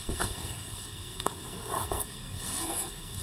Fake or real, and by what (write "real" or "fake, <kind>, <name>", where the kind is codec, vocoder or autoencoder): fake, codec, SNAC